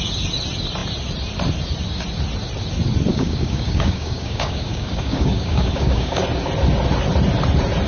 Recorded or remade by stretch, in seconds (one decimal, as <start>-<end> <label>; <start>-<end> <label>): 0.0-3.1 recorded; 3.1-6.2 remade; 6.2-7.9 recorded

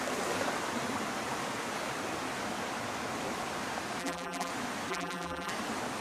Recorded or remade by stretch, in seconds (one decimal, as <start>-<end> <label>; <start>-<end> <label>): 0.0-4.0 recorded; 4.0-4.5 remade; 4.5-4.9 recorded; 4.9-5.5 remade; 5.5-6.0 recorded

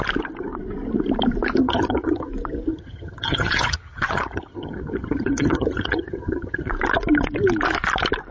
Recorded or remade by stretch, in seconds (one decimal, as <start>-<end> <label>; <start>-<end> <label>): 0.0-1.6 recorded; 1.6-2.3 remade; 2.3-2.7 recorded; 2.7-6.7 remade; 6.7-8.3 recorded